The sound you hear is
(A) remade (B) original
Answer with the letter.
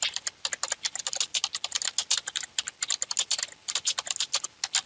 B